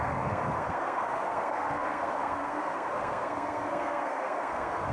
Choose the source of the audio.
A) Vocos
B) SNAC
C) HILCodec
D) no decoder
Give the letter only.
B